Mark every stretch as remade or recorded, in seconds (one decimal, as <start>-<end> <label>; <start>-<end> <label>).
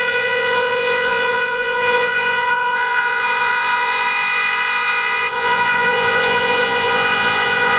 0.0-7.8 remade